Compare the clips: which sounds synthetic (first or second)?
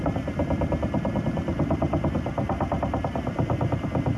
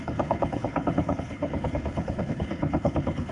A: second